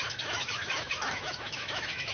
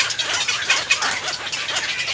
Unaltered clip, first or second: second